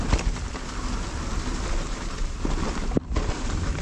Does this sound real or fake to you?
real